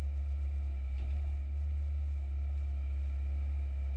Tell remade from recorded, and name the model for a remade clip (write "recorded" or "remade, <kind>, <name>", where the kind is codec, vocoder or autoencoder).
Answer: recorded